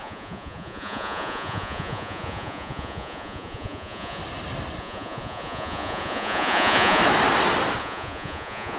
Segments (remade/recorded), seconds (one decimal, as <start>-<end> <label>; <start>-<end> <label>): 0.0-4.2 remade; 4.2-4.8 recorded; 4.8-7.0 remade; 7.0-7.8 recorded; 7.8-8.8 remade